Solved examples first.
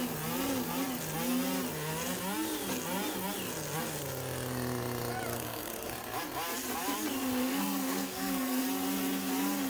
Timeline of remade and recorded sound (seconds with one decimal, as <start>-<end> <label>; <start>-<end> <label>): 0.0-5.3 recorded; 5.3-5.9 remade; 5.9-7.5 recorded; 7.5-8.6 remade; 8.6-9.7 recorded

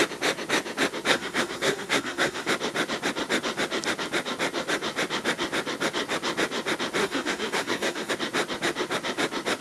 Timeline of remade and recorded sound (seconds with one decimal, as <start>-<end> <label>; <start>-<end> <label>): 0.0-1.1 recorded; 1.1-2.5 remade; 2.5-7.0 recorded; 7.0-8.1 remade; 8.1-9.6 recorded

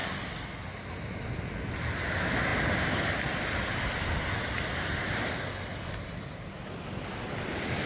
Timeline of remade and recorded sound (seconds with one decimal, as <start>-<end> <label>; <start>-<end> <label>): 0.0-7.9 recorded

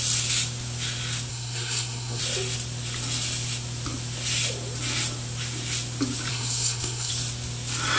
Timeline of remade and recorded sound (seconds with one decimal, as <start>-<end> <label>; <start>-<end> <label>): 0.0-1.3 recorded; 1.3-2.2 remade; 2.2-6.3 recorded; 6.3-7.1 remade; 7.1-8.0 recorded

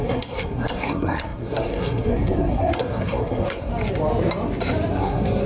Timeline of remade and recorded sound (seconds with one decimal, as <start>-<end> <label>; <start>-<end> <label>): 0.0-3.7 remade; 3.7-4.9 recorded; 4.9-5.5 remade

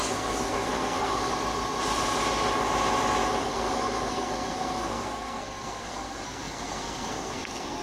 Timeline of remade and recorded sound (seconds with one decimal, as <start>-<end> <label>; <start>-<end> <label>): 0.0-1.3 remade; 1.3-3.4 recorded; 3.4-7.8 remade

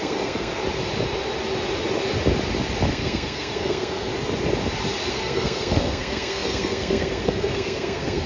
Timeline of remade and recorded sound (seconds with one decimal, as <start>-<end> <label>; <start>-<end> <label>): 0.0-0.6 remade; 0.6-2.9 recorded; 2.9-4.1 remade; 4.1-5.1 recorded; 5.1-8.3 remade

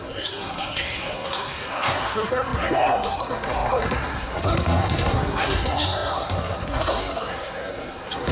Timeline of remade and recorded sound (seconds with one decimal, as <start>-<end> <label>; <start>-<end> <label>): 0.0-8.3 remade